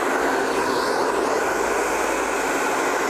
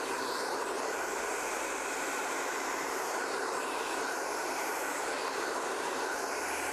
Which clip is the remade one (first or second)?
second